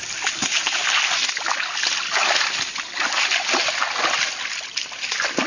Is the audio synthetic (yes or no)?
no